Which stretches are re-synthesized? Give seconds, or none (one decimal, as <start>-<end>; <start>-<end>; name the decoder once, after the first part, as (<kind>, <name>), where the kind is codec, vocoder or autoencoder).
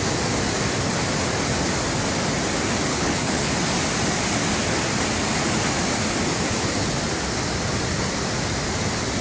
2.9-3.5 (codec, HILCodec)